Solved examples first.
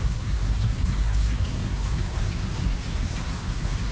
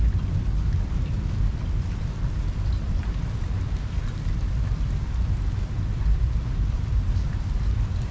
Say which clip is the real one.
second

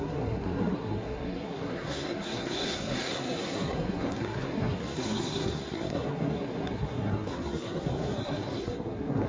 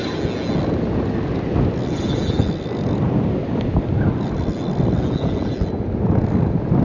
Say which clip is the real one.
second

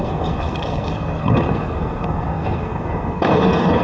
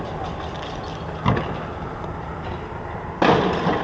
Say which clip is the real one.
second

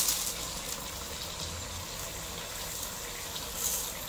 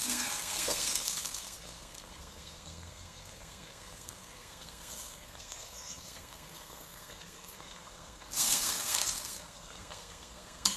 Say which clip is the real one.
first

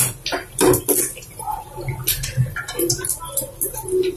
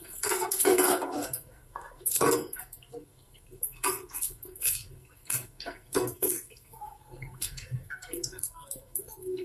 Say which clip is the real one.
first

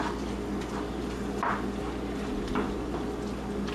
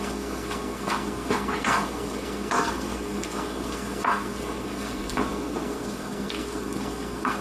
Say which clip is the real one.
first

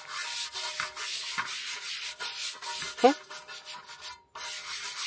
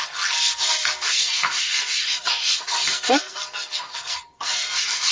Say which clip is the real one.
first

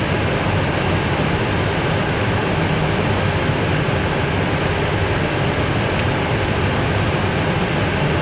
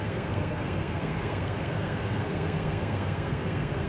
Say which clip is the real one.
first